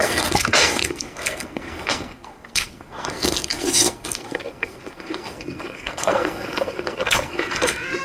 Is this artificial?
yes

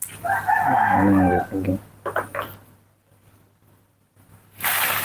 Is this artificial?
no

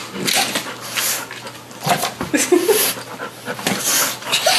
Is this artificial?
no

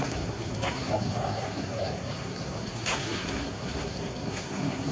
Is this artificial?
yes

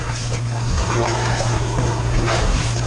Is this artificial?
yes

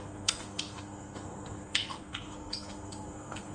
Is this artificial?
yes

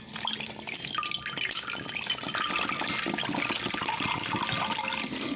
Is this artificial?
no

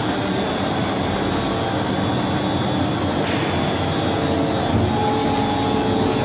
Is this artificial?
no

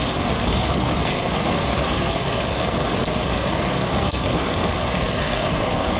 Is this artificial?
yes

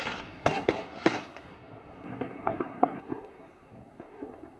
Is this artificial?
yes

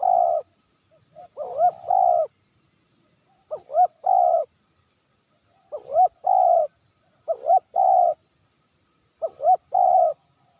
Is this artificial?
no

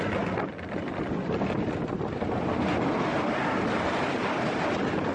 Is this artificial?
no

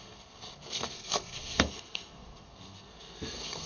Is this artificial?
yes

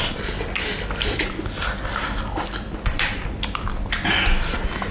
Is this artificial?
no